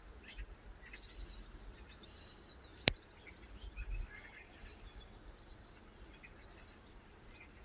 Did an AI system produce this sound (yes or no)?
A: no